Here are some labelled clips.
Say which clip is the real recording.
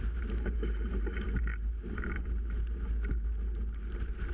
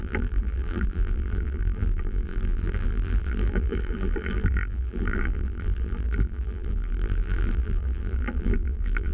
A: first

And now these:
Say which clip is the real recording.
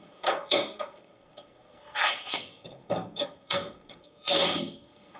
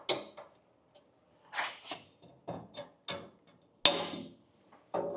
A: second